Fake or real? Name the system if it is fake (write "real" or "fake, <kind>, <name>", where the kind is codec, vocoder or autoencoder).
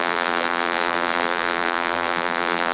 fake, vocoder, BigVGAN v2